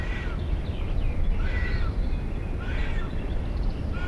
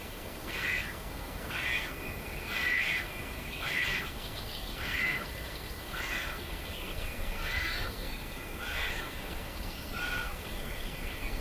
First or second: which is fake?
second